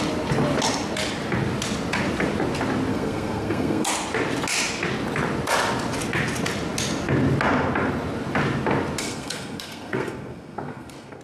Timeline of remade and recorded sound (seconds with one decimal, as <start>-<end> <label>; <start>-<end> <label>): 0.0-2.9 recorded; 2.9-3.9 remade; 3.9-9.0 recorded; 9.0-11.2 remade